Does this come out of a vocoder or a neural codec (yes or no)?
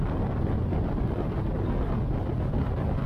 no